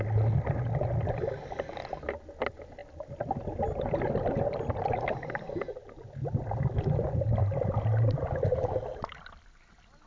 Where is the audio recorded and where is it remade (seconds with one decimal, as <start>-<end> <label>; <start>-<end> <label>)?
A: 0.0-10.1 recorded

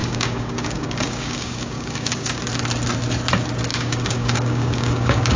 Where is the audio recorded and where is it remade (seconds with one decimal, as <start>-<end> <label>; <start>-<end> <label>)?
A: 0.0-2.4 remade; 2.4-3.7 recorded; 3.7-5.4 remade